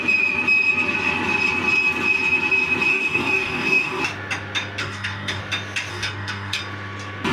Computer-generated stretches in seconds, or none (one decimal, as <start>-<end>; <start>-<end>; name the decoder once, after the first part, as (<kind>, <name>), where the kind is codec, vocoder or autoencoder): 2.9-4.0 (codec, DAC); 4.8-5.4; 5.9-6.6